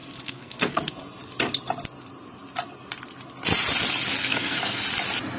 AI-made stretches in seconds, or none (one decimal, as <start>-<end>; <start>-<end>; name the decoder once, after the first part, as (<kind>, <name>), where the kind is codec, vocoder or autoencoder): 0.0-0.9 (codec, SNAC); 4.2-4.8